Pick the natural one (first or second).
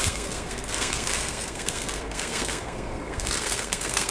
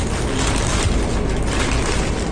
second